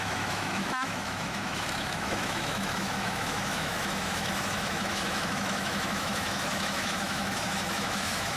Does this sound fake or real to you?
fake